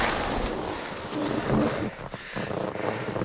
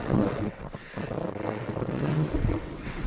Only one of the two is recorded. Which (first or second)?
first